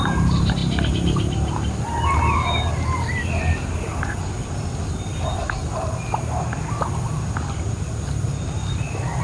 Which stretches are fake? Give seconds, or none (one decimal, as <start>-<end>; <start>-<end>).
none

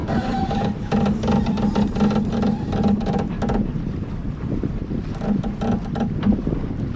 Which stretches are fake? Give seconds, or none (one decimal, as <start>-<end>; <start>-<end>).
0.0-3.3; 4.2-5.9

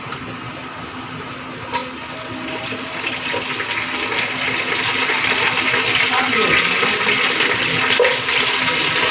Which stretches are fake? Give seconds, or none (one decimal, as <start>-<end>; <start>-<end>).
0.0-1.8; 2.6-9.1

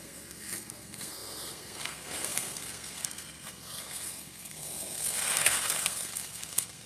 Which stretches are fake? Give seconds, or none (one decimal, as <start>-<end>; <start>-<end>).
0.0-6.9

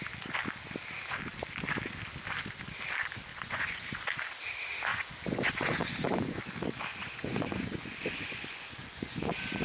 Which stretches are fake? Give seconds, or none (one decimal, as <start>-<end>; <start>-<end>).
3.3-3.9; 4.9-6.4; 6.9-9.2

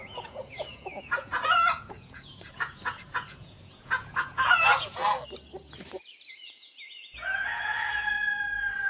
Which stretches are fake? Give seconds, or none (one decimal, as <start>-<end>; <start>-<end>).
0.0-5.0; 6.3-8.9